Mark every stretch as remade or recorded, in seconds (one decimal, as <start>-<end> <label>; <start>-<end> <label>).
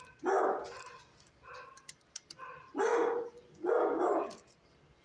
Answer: 0.0-2.9 recorded; 2.9-3.7 remade; 3.7-5.0 recorded